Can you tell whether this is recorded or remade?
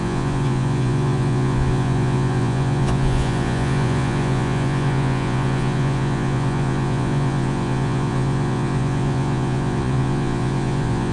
remade